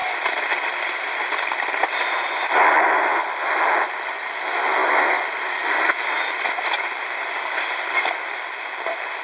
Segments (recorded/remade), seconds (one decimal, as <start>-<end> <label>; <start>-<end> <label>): 0.0-2.4 remade; 2.4-4.8 recorded; 4.8-5.5 remade; 5.5-9.2 recorded